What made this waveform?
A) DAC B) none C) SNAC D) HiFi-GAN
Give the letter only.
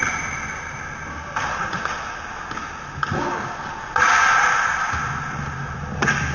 B